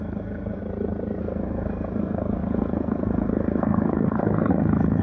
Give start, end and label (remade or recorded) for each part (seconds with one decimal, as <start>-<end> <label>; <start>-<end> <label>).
0.0-0.6 remade; 0.6-1.2 recorded; 1.2-5.0 remade